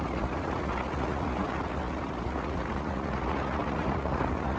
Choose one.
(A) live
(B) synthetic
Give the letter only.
B